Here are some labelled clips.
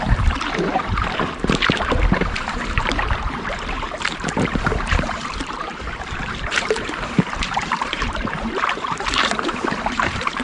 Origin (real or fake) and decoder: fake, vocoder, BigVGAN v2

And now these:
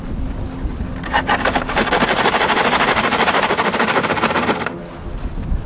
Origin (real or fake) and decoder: real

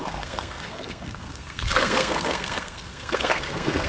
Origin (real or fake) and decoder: fake, codec, SNAC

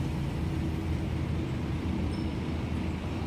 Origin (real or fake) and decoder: real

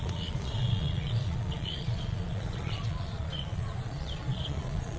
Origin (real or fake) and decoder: fake, vocoder, Vocos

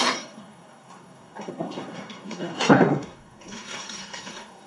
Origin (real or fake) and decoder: fake, codec, SNAC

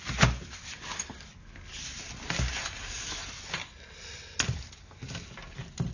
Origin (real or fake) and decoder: real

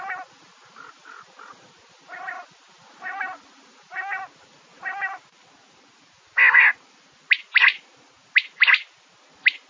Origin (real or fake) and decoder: real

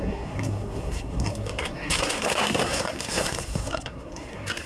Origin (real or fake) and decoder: fake, codec, SNAC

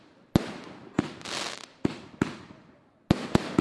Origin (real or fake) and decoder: real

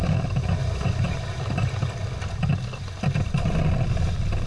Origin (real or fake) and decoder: real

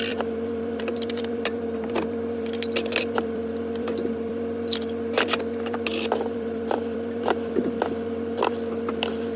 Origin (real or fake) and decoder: fake, vocoder, BigVGAN v2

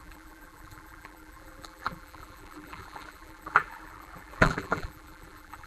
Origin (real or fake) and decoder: fake, vocoder, BigVGAN v2